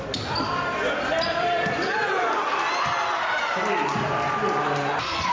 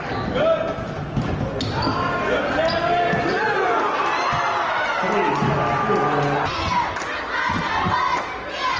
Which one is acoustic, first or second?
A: second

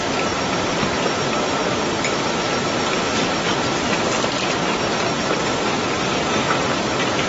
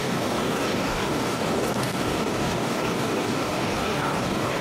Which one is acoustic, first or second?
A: first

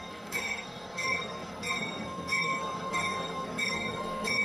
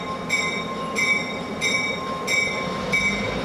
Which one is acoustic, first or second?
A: second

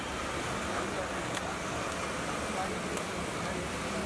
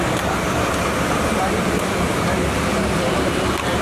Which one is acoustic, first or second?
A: first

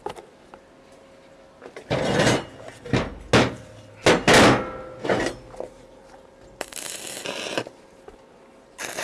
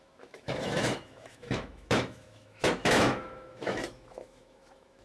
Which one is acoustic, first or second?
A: first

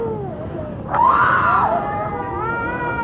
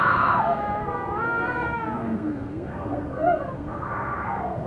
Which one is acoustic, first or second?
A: first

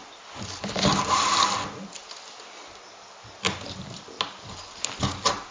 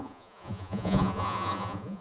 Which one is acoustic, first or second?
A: first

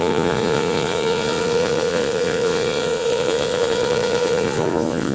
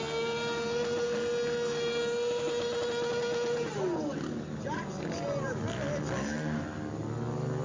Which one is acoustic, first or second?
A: second